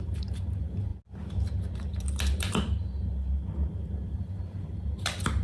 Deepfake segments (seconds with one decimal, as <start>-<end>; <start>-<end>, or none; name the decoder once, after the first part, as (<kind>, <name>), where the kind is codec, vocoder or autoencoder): 0.0-0.9 (vocoder, BigVGAN v2); 4.1-5.4